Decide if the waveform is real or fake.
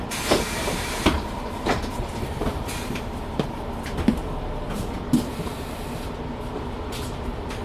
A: fake